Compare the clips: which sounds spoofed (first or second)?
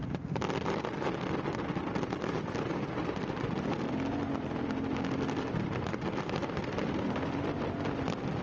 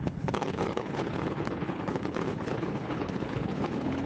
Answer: second